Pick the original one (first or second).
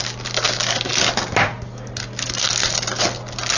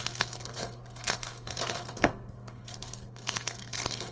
first